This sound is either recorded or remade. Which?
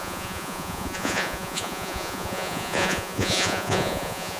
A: remade